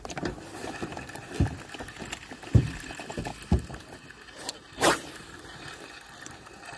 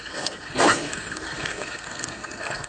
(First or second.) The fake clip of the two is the second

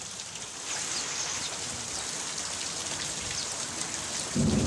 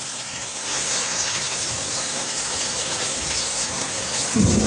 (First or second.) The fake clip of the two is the second